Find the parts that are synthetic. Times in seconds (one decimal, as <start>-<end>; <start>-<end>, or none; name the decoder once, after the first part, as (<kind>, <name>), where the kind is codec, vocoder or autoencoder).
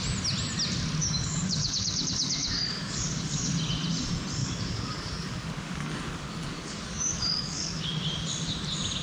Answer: 1.0-3.5 (codec, DAC); 4.4-7.8